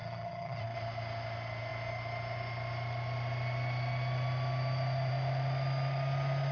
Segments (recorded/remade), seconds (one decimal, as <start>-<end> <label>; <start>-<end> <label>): 0.0-0.6 remade; 0.6-6.5 recorded